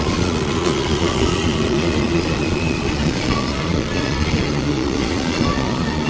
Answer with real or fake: fake